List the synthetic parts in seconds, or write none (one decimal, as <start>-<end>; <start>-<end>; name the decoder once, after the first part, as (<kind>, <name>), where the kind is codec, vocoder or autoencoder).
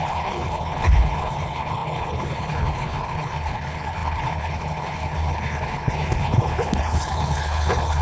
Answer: 0.0-8.0 (codec, HILCodec)